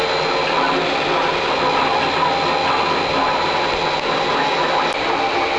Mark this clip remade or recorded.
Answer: recorded